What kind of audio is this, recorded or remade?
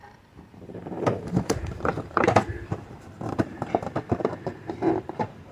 remade